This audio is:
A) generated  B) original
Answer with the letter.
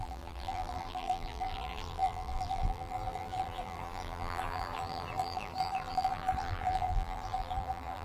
A